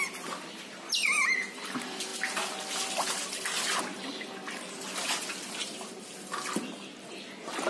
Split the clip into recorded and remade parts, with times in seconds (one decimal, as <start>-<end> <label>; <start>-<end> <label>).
0.0-7.7 recorded